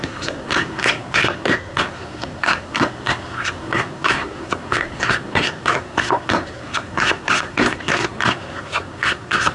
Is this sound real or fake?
fake